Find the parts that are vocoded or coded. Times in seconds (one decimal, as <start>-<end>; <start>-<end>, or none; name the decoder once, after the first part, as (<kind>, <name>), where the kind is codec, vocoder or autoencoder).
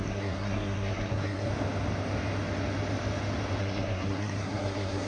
0.0-1.5 (codec, SNAC); 3.6-5.1